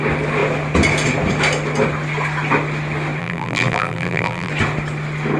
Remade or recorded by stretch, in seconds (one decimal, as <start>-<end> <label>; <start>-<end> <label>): 0.0-3.2 recorded; 3.2-4.5 remade; 4.5-5.4 recorded